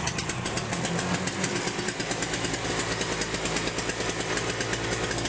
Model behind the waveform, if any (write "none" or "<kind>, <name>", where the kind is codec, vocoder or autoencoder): none